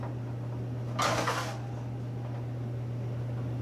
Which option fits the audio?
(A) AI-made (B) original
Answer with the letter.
B